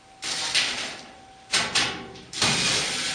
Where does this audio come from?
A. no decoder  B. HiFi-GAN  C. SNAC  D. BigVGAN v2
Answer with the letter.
D